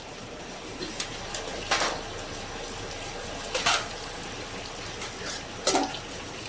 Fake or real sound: real